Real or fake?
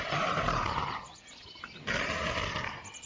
real